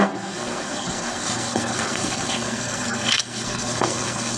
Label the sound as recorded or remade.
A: remade